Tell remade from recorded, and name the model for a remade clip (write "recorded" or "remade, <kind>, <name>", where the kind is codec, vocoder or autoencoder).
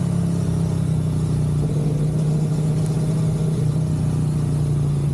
recorded